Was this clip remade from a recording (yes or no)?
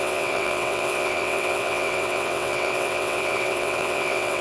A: yes